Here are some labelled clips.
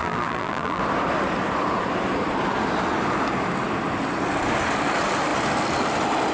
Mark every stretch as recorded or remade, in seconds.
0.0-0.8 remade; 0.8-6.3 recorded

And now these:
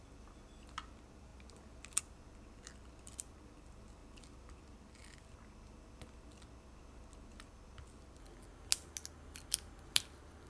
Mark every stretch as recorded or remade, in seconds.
0.0-4.0 remade; 4.0-4.6 recorded; 4.6-5.0 remade; 5.0-9.9 recorded; 9.9-10.5 remade

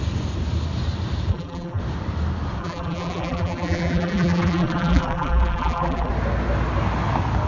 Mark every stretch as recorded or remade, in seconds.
0.0-1.3 recorded; 1.3-1.8 remade; 1.8-2.6 recorded; 2.6-6.1 remade; 6.1-7.5 recorded

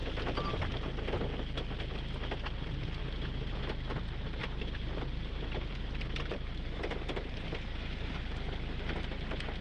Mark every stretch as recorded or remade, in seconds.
0.0-3.0 recorded; 3.0-3.6 remade; 3.6-4.4 recorded; 4.4-8.2 remade; 8.2-9.6 recorded

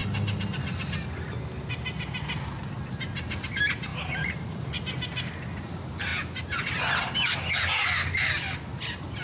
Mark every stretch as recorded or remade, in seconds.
0.0-3.9 recorded; 3.9-4.8 remade; 4.8-9.2 recorded

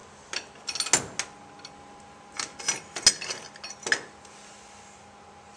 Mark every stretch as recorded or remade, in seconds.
0.0-5.6 recorded

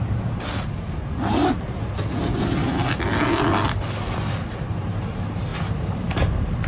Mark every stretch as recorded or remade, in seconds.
0.0-1.4 remade; 1.4-4.3 recorded; 4.3-6.7 remade